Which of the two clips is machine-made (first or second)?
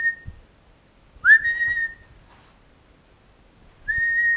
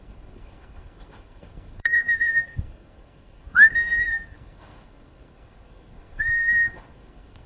second